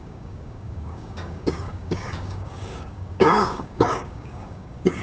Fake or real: fake